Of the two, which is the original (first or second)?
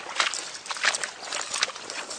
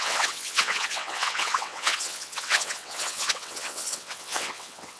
first